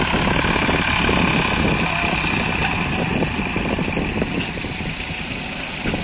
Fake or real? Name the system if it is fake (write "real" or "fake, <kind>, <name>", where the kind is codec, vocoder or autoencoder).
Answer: real